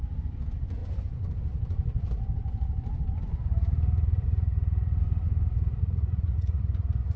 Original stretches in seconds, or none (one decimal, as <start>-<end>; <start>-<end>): 0.0-5.7